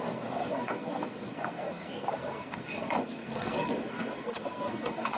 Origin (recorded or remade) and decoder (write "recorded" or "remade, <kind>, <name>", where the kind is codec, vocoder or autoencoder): remade, codec, SNAC